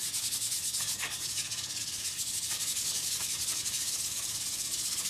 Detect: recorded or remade remade